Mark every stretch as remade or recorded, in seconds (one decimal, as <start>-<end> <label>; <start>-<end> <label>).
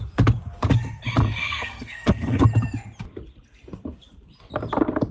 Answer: 0.0-1.4 recorded; 1.4-2.4 remade; 2.4-5.1 recorded